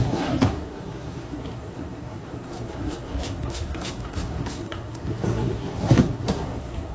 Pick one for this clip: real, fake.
fake